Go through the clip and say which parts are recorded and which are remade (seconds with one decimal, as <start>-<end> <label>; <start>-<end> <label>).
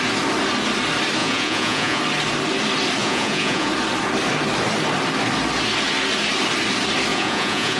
0.0-1.2 recorded; 1.2-2.0 remade; 2.0-3.0 recorded; 3.0-3.7 remade; 3.7-7.1 recorded; 7.1-7.8 remade